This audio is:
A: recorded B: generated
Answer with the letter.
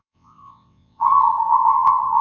B